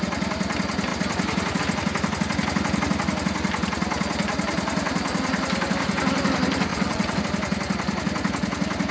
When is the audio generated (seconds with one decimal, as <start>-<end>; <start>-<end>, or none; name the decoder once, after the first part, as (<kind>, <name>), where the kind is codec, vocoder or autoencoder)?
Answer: 6.7-7.2 (vocoder, WaveNeXt)